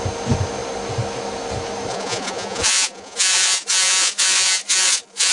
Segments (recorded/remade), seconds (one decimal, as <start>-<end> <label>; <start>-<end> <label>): 0.0-1.9 recorded; 1.9-5.3 remade